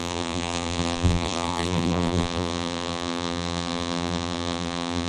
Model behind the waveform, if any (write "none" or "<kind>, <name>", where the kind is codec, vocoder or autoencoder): vocoder, BigVGAN v2